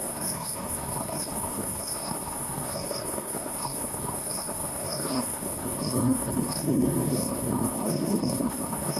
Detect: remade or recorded remade